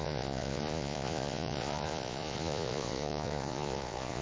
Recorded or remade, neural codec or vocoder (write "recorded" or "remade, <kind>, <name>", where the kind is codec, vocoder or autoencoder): remade, vocoder, Vocos